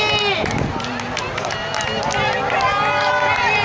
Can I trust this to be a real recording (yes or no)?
yes